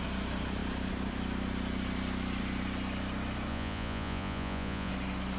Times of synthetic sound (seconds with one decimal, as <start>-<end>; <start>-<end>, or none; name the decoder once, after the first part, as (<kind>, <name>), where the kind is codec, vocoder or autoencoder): 3.5-4.9 (vocoder, Vocos)